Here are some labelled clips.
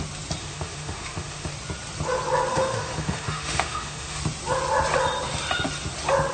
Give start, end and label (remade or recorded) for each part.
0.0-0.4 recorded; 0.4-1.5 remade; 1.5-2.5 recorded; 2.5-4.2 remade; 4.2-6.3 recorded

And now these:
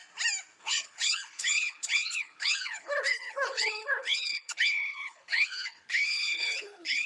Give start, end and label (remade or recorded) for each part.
0.0-0.6 recorded; 0.6-7.1 remade

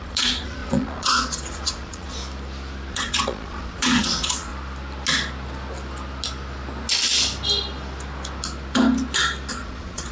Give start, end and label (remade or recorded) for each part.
0.0-2.2 remade; 2.2-2.9 recorded; 2.9-4.5 remade; 4.5-9.5 recorded; 9.5-10.1 remade

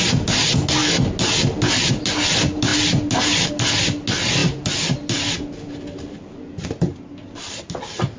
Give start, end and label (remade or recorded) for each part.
0.0-8.2 recorded